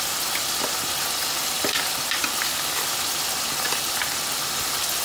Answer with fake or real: real